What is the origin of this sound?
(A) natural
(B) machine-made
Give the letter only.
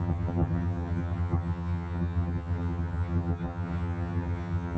B